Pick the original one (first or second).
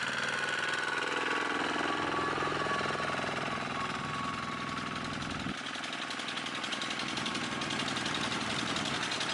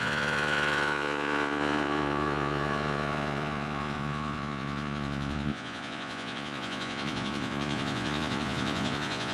first